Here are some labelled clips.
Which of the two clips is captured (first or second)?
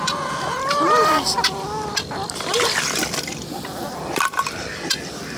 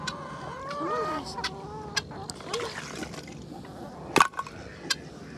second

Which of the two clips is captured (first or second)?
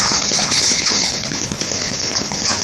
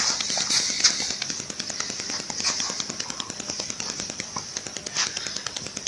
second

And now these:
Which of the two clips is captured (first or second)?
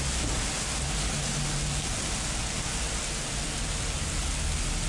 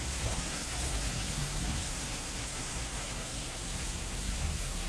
first